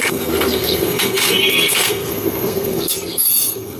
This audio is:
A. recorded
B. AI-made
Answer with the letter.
B